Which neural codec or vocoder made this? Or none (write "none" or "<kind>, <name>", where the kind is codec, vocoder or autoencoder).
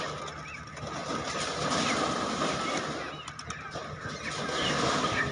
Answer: none